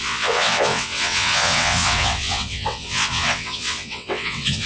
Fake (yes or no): yes